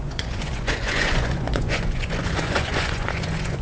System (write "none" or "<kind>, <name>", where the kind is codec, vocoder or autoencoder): vocoder, Vocos